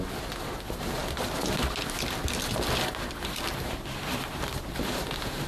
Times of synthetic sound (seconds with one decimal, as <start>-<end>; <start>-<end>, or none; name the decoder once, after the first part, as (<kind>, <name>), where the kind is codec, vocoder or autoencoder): none